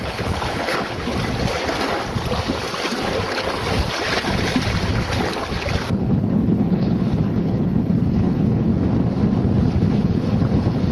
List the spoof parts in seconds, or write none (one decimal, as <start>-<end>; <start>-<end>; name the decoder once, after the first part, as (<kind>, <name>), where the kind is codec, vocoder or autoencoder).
0.0-1.1 (codec, HILCodec); 6.0-8.7; 9.9-10.9